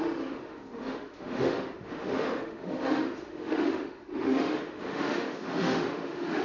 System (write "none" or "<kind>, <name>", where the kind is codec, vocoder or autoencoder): autoencoder, DAC-VAE